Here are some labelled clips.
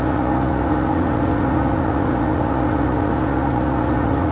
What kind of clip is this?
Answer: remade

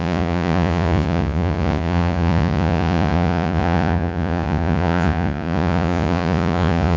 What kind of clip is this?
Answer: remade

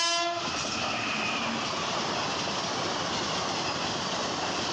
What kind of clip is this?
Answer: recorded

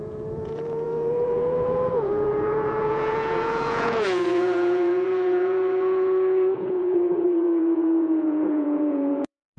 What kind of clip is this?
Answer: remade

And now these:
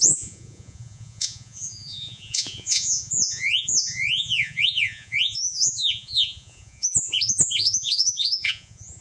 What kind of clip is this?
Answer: remade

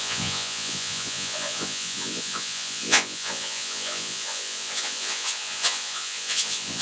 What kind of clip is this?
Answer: remade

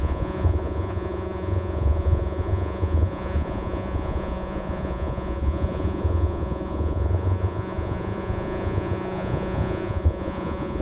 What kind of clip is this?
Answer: remade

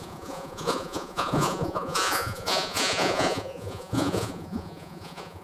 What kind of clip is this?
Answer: remade